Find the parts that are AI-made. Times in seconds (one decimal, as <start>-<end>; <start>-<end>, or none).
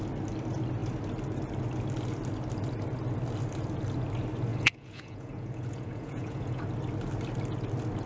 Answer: 4.5-6.6